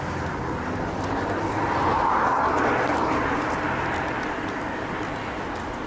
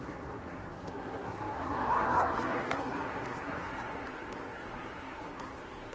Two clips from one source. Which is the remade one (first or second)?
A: second